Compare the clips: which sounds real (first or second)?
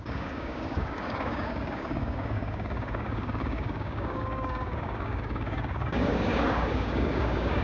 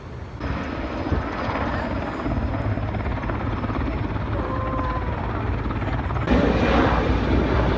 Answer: second